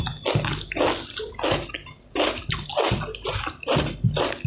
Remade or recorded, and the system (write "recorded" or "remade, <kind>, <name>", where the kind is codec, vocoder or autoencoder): recorded